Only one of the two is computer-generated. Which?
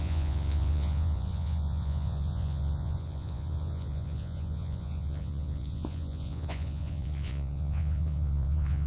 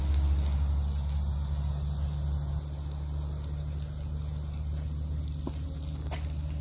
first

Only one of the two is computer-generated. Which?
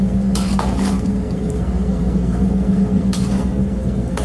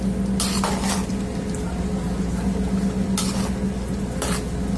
first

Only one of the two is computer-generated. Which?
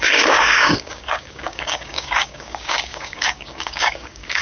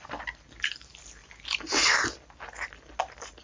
first